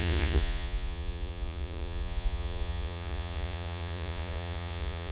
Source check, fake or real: fake